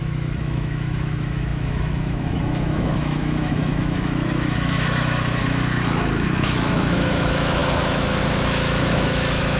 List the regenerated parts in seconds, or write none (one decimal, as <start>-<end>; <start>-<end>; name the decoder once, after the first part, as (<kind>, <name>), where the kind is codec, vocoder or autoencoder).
0.0-9.6 (autoencoder, DAC-VAE)